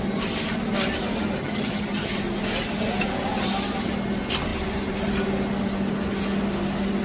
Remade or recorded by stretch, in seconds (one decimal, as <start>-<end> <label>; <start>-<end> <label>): 0.0-1.4 recorded; 1.4-2.2 remade; 2.2-7.0 recorded